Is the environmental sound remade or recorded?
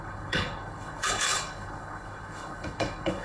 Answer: remade